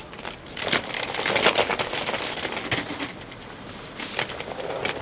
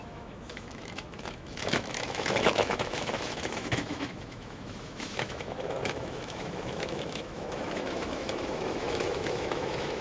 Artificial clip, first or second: second